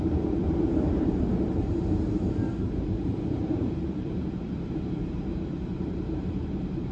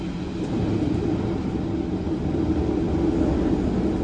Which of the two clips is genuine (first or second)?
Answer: second